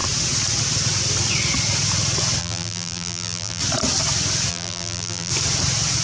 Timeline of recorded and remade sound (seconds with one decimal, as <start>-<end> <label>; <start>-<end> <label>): 0.0-2.4 recorded; 2.4-3.6 remade; 3.6-4.5 recorded; 4.5-5.3 remade; 5.3-6.0 recorded